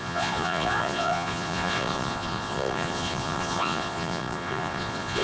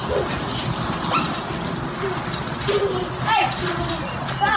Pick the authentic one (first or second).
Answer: second